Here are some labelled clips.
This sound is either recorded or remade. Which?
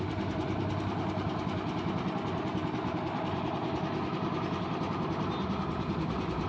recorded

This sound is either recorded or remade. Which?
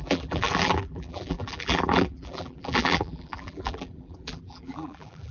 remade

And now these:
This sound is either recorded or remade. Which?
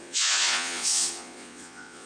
remade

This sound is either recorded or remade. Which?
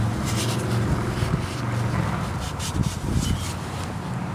recorded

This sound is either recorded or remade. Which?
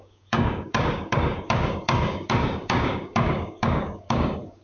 remade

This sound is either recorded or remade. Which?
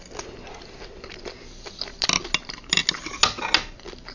recorded